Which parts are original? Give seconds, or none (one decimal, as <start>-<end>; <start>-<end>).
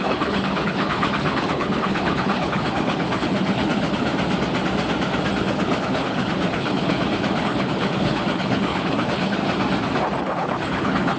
4.1-5.4; 9.4-10.2